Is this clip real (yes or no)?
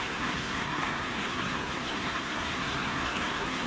no